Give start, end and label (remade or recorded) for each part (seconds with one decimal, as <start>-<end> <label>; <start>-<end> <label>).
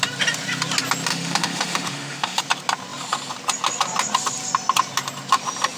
0.0-1.1 recorded; 1.1-2.4 remade; 2.4-5.8 recorded